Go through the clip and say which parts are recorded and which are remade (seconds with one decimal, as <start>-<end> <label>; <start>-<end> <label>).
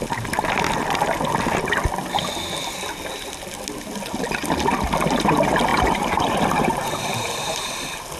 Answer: 0.0-5.7 recorded; 5.7-7.7 remade; 7.7-8.2 recorded